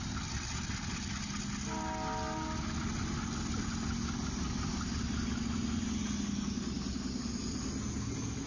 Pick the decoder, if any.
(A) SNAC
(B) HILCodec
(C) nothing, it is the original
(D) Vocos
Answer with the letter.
C